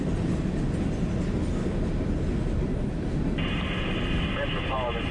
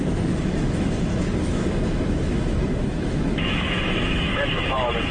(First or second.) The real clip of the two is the first